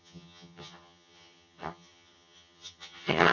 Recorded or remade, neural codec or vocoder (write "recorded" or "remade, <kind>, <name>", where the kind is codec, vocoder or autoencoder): remade, vocoder, HiFi-GAN